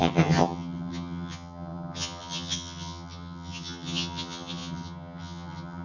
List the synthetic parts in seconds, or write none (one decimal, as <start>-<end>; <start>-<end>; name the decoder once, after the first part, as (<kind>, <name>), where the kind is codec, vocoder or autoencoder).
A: 0.0-5.8 (vocoder, HiFi-GAN)